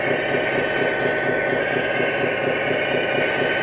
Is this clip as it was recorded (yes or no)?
yes